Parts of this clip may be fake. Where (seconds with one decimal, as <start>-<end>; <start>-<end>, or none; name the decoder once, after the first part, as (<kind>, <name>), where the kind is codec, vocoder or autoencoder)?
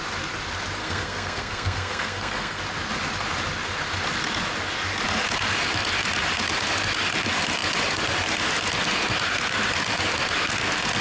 0.8-2.6 (codec, SNAC)